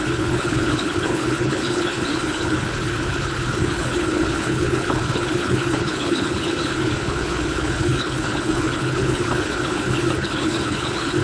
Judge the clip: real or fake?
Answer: fake